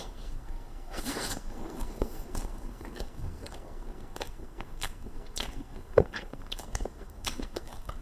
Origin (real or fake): fake